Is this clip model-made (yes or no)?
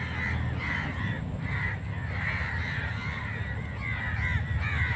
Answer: no